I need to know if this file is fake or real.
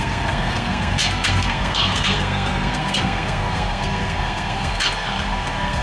fake